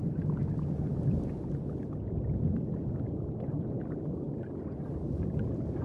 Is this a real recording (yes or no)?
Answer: yes